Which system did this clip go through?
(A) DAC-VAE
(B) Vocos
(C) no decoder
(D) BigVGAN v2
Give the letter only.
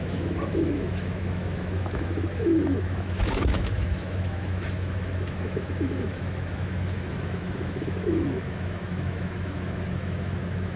A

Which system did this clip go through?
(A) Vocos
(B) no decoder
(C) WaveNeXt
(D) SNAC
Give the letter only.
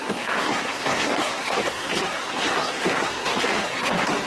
D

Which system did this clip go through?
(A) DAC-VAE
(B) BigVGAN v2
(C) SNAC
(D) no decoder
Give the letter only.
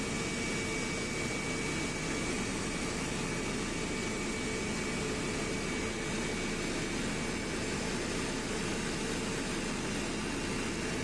D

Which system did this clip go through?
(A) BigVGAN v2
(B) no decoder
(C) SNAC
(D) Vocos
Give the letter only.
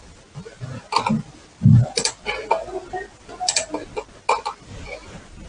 B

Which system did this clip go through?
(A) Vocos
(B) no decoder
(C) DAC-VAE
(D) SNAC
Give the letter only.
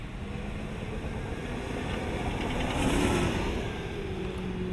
B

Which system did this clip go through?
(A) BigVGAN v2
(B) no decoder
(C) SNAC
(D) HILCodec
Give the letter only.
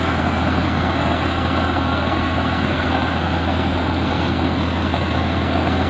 C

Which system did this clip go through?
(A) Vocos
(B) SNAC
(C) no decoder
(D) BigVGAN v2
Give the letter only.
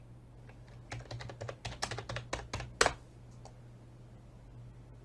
C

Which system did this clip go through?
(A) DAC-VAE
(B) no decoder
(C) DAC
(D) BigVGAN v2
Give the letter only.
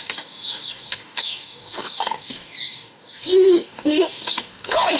C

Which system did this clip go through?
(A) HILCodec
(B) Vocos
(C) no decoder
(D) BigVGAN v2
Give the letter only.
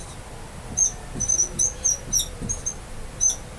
C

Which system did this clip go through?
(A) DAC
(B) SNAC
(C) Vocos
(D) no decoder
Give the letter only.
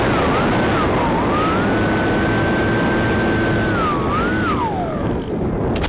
D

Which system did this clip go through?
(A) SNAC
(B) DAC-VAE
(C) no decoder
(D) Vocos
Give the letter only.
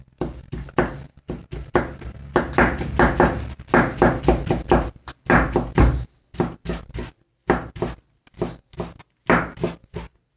C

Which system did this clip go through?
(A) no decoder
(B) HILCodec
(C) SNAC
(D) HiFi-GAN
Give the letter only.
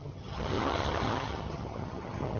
D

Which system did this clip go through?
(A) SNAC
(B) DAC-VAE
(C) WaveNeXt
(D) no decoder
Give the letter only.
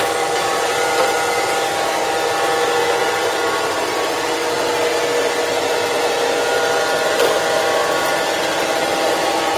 D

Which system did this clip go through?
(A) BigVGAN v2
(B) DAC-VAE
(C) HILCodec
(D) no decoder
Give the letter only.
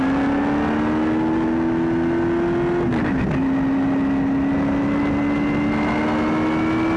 D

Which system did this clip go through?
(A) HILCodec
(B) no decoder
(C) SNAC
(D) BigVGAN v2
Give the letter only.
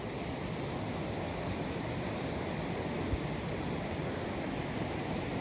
B